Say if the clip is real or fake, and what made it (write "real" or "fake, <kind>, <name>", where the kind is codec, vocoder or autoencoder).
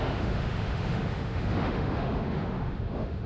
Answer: fake, autoencoder, DAC-VAE